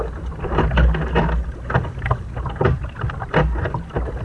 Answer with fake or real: real